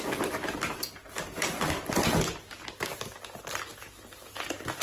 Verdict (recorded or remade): recorded